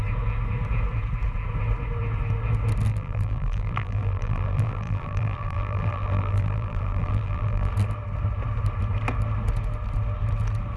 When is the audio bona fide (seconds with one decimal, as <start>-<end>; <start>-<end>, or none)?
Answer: 0.0-2.9; 7.7-10.8